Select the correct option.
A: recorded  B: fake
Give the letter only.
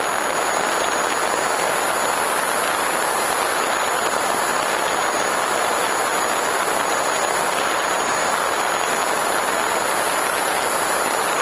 A